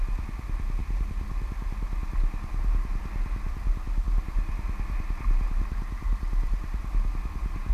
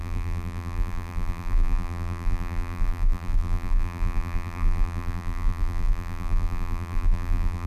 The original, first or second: first